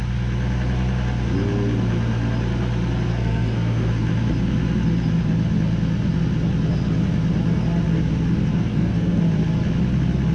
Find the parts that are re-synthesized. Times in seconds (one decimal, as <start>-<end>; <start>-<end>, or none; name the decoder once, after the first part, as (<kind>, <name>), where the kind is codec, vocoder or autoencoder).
3.1-3.9 (codec, SNAC); 8.5-9.2